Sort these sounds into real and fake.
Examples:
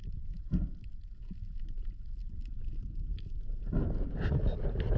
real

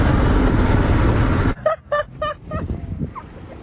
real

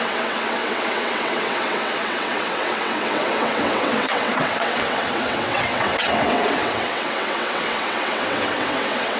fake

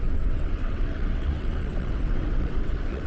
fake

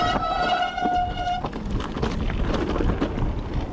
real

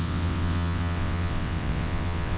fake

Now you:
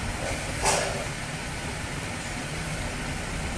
real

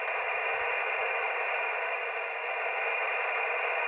real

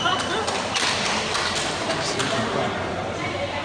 real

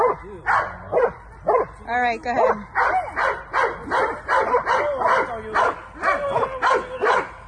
real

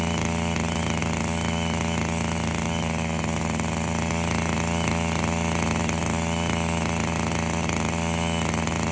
real